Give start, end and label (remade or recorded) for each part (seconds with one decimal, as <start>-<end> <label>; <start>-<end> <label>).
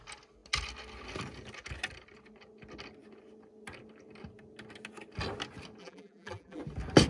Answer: 0.0-5.8 recorded; 5.8-6.6 remade; 6.6-7.1 recorded